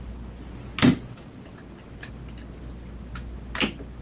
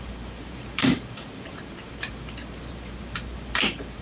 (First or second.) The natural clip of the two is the first